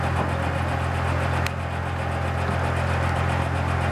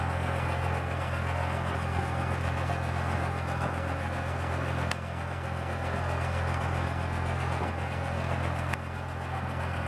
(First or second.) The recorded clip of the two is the first